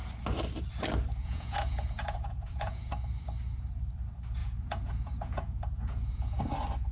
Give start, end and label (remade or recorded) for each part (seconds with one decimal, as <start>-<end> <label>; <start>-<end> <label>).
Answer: 0.0-1.2 recorded; 1.2-2.9 remade; 2.9-4.4 recorded; 4.4-6.4 remade; 6.4-6.9 recorded